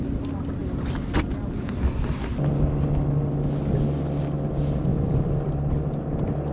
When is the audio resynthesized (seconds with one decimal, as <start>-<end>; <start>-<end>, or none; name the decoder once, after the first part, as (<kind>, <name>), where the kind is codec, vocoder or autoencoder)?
4.9-5.8 (vocoder, BigVGAN v2)